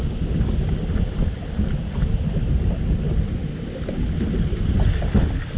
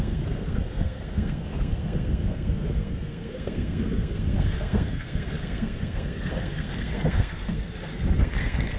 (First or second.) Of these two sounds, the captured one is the first